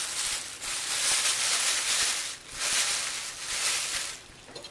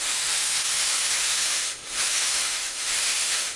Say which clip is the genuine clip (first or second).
first